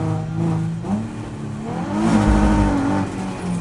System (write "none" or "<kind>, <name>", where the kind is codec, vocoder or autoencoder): none